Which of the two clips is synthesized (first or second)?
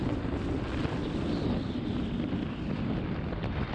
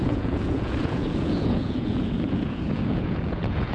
second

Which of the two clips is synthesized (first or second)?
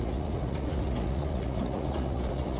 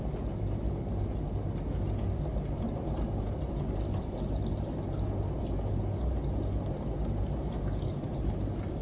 first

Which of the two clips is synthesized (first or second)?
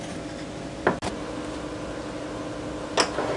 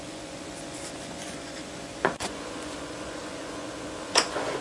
second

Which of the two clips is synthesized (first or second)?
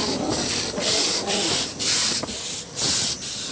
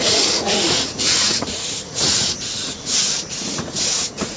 second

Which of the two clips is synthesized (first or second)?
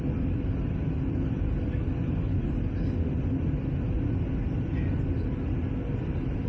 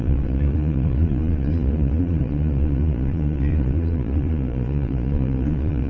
second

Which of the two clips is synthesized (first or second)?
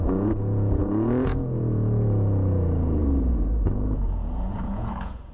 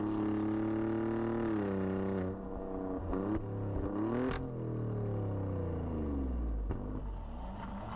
first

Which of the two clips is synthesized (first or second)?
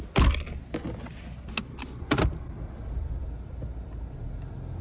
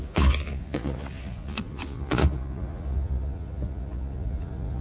second